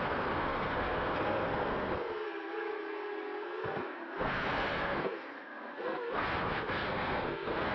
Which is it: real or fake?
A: fake